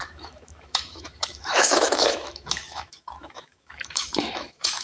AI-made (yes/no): yes